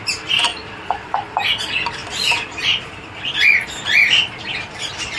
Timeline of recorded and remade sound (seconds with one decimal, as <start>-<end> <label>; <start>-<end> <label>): 0.0-0.5 recorded; 0.5-1.5 remade; 1.5-2.0 recorded; 2.0-5.2 remade